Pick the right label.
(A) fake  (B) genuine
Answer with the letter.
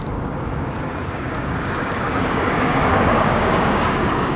A